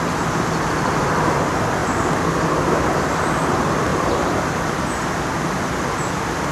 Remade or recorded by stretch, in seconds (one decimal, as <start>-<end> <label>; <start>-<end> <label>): 0.0-1.8 recorded; 1.8-3.2 remade; 3.2-3.9 recorded; 3.9-4.6 remade; 4.6-6.5 recorded